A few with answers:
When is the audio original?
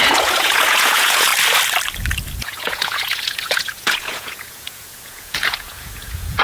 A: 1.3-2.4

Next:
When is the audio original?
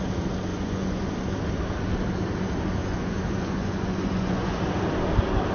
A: 0.0-0.5; 1.1-2.8; 4.6-5.5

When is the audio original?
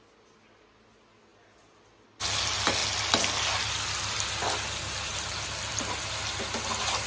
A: 0.0-7.1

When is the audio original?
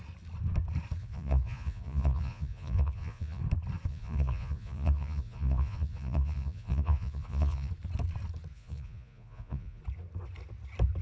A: 0.0-1.0; 3.4-3.9; 7.7-8.5; 9.8-11.0